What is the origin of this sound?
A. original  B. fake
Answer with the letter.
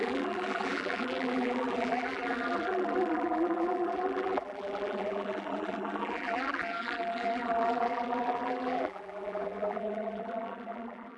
B